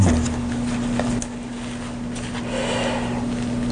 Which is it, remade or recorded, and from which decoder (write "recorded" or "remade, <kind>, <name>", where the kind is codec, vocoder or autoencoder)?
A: recorded